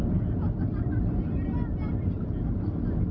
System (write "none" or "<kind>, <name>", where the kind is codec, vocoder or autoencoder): none